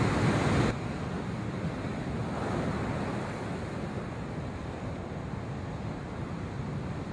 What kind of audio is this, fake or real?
real